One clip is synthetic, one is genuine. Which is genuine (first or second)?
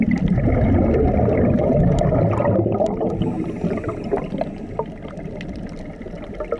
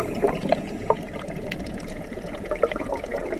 first